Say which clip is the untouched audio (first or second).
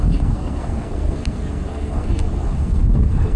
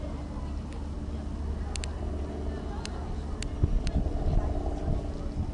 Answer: second